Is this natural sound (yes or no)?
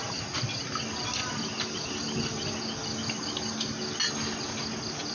yes